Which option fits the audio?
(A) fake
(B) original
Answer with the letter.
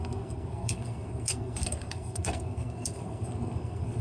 A